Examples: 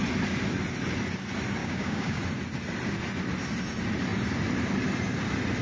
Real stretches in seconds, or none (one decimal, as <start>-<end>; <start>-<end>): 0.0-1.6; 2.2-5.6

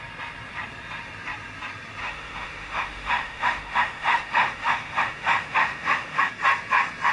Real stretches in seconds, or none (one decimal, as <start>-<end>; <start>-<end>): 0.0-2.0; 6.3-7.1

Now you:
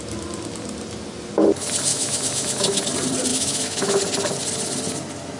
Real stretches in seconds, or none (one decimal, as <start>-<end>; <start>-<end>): 0.0-1.9; 2.8-3.3; 4.0-5.4

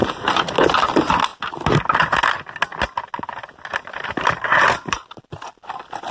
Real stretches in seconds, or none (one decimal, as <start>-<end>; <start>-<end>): 0.5-3.7; 5.2-6.1

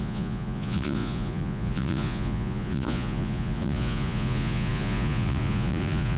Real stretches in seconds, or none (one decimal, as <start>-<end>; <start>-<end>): none

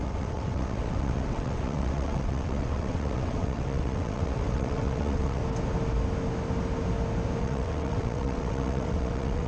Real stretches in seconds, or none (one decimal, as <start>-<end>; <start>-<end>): 5.4-7.4